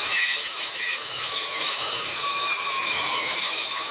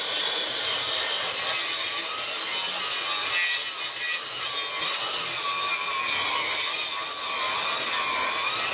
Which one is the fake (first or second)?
first